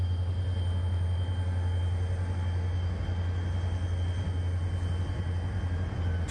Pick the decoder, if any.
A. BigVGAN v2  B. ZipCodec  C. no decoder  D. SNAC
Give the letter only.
C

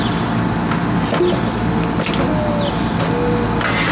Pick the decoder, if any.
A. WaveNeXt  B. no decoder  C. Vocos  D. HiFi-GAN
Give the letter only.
B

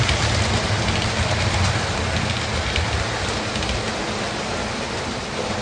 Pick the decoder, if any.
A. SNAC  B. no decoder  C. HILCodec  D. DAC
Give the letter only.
B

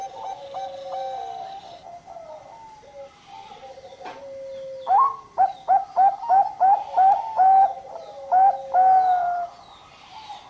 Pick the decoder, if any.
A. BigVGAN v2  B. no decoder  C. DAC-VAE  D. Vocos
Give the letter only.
B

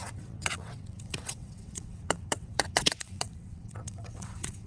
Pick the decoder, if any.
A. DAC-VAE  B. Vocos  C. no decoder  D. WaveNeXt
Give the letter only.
D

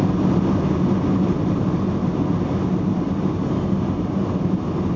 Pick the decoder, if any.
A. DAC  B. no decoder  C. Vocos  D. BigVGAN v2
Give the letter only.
B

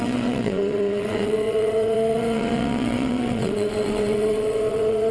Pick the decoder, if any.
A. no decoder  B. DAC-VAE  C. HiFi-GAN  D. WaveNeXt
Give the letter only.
D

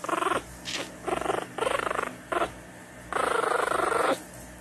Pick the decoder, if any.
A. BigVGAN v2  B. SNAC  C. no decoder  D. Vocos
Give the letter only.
C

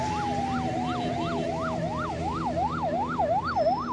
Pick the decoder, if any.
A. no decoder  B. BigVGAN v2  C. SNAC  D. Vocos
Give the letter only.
A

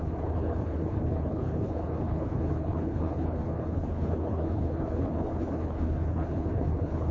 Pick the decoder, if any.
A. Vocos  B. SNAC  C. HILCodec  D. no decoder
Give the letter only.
C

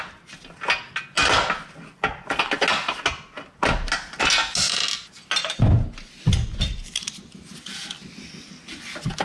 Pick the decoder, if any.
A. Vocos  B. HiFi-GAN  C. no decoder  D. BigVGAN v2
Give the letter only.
C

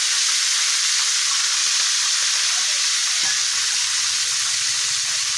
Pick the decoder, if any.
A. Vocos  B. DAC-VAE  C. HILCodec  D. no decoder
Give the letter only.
D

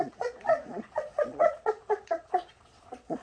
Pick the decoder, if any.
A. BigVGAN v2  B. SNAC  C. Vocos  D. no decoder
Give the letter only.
C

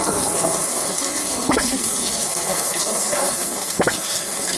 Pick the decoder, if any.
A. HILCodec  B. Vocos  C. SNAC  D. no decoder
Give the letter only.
C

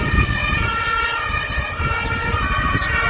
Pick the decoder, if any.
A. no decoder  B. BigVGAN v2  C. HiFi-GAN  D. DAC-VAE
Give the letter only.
B